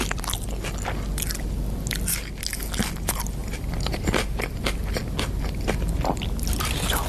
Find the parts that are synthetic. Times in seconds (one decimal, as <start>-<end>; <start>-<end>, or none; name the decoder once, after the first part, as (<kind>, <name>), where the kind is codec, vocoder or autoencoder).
3.4-5.0 (vocoder, BigVGAN v2)

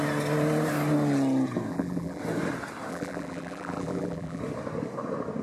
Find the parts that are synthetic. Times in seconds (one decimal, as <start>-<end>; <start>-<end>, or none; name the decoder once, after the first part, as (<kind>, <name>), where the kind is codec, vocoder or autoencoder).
1.7-2.2 (vocoder, BigVGAN v2); 2.9-4.4